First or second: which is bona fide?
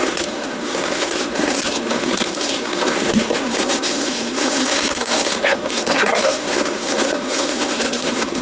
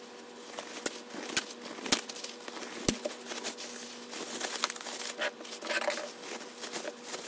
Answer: second